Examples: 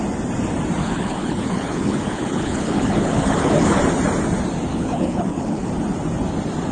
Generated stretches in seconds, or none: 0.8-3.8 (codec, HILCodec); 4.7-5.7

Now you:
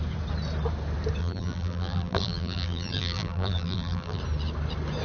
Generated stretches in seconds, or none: 1.2-4.2 (vocoder, BigVGAN v2)

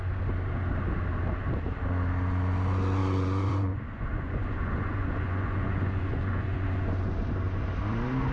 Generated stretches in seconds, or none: 3.0-7.1 (vocoder, Vocos)

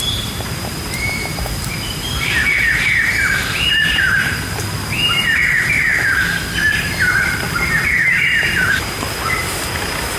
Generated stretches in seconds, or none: 0.0-5.9 (vocoder, BigVGAN v2); 6.8-10.2

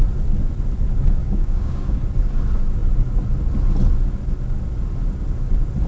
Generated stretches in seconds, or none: 1.2-2.0 (codec, DAC)